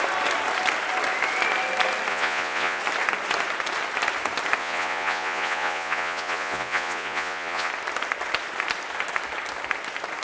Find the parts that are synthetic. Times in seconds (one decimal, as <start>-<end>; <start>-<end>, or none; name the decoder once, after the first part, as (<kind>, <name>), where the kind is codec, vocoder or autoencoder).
2.1-2.8 (vocoder, Vocos); 4.6-7.7